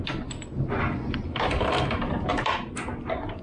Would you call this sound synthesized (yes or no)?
no